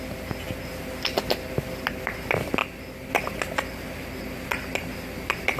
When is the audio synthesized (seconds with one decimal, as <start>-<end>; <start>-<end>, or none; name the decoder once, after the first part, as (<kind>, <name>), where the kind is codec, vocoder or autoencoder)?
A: none